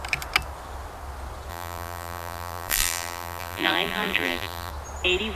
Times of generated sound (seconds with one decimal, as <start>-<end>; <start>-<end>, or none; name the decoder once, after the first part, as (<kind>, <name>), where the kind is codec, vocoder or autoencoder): 1.5-4.7 (vocoder, BigVGAN v2)